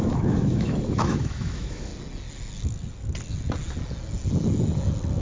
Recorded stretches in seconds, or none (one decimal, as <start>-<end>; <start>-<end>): 1.9-5.2